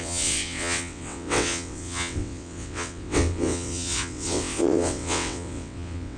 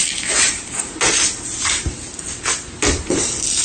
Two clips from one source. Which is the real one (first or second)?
second